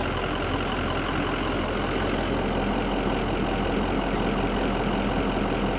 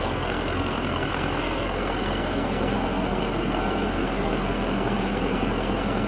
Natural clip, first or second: first